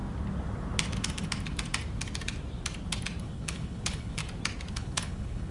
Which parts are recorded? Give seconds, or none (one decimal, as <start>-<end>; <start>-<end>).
0.0-3.2; 4.2-4.7